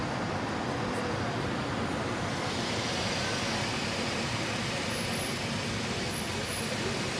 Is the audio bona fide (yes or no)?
yes